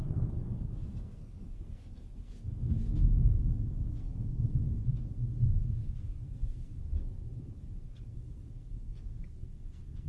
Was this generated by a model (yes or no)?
yes